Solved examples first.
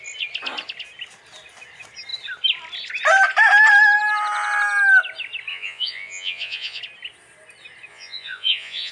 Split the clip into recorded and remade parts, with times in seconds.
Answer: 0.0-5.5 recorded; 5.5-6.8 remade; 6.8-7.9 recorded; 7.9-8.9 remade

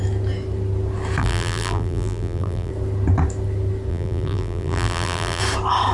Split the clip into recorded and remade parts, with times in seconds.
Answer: 0.0-1.2 recorded; 1.2-2.7 remade; 2.7-3.9 recorded; 3.9-5.4 remade; 5.4-5.9 recorded

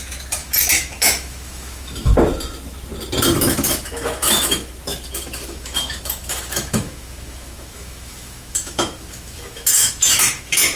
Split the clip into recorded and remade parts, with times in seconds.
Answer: 0.0-2.1 remade; 2.1-3.4 recorded; 3.4-10.8 remade

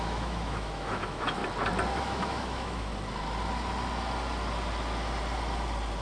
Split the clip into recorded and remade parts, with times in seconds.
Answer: 0.0-1.4 remade; 1.4-2.0 recorded; 2.0-2.9 remade; 2.9-6.0 recorded

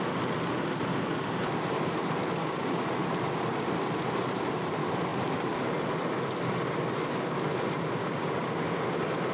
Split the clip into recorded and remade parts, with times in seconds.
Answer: 0.0-2.4 recorded; 2.4-2.9 remade; 2.9-8.0 recorded; 8.0-8.6 remade; 8.6-9.3 recorded

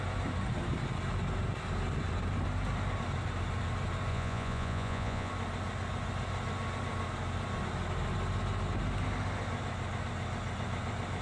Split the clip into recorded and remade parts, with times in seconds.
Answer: 0.0-4.1 recorded; 4.1-5.3 remade; 5.3-11.2 recorded